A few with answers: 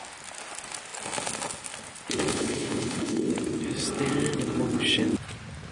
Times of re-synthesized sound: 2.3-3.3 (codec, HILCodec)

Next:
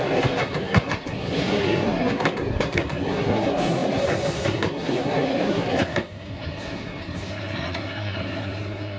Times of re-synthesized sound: 0.0-9.0 (codec, SNAC)